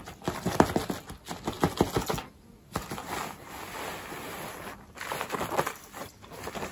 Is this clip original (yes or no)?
yes